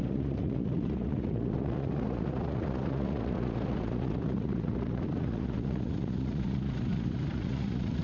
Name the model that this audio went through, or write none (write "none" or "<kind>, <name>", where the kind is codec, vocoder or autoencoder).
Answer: vocoder, Vocos